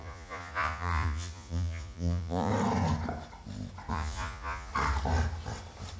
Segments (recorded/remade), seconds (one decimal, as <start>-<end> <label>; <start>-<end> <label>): 0.0-2.5 remade; 2.5-3.9 recorded; 3.9-4.7 remade; 4.7-6.0 recorded